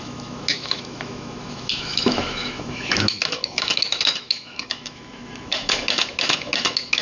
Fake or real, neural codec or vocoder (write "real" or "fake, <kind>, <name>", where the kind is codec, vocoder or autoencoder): fake, autoencoder, DAC-VAE